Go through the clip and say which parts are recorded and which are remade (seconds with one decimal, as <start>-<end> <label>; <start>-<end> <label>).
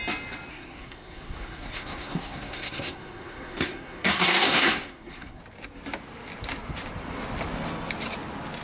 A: 0.0-0.5 recorded; 0.5-5.4 remade; 5.4-8.6 recorded